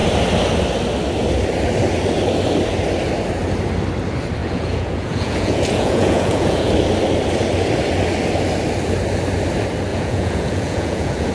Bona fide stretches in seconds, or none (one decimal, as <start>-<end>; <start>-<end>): 0.0-4.4; 6.7-9.9